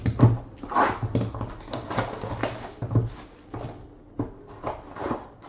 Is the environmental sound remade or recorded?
recorded